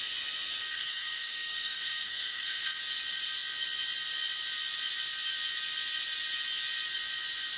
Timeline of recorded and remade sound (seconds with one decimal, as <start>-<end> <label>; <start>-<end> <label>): 0.0-0.7 recorded; 0.7-2.8 remade; 2.8-7.6 recorded